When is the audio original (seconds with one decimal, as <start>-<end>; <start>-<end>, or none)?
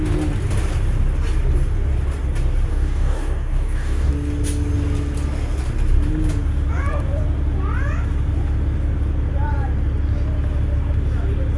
0.0-2.7; 4.1-11.6